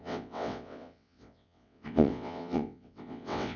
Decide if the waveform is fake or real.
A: fake